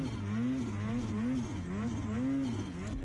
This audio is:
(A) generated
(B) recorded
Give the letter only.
B